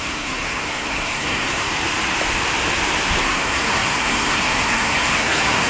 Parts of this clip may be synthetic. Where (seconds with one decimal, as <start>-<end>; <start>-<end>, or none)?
0.0-1.7; 3.2-5.7